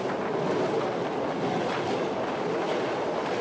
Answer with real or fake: real